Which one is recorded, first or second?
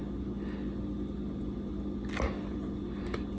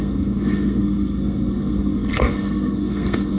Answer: first